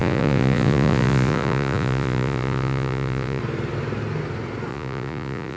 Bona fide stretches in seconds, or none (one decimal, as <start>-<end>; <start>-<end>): 3.4-4.7